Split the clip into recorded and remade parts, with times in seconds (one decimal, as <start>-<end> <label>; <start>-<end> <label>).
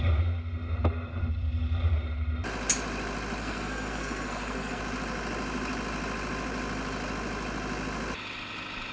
0.0-3.4 recorded; 3.4-4.8 remade; 4.8-8.9 recorded